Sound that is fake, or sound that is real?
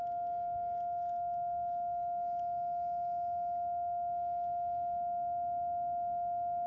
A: real